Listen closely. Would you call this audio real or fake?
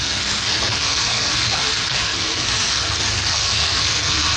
fake